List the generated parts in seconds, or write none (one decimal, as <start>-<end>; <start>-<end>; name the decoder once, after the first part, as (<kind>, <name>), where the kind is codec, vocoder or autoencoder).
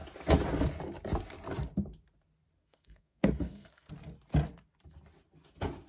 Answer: 2.6-3.9 (codec, SNAC)